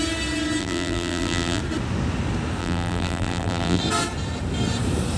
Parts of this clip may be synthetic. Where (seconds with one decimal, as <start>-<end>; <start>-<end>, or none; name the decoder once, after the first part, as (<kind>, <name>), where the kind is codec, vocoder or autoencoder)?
0.6-1.6 (vocoder, BigVGAN v2); 2.6-3.8